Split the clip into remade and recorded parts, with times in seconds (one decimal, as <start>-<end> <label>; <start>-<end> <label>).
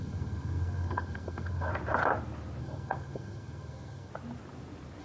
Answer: 0.0-1.7 remade; 1.7-2.6 recorded; 2.6-4.1 remade; 4.1-5.0 recorded